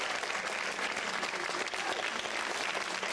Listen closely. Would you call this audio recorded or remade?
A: remade